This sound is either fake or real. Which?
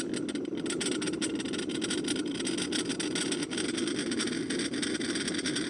real